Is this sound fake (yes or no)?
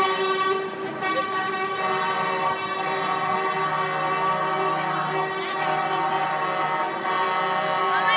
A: no